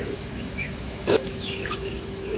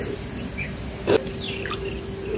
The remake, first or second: first